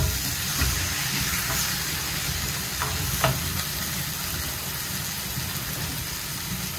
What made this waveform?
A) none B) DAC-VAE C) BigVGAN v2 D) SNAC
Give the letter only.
A